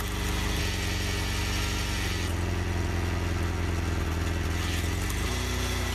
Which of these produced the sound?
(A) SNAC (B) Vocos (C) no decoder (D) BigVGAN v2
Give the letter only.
C